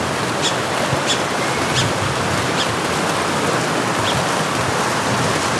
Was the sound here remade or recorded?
recorded